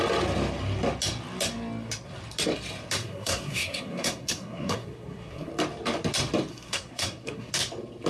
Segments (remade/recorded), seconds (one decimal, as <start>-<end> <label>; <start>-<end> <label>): 0.0-3.0 recorded; 3.0-5.5 remade; 5.5-6.5 recorded; 6.5-7.5 remade; 7.5-8.1 recorded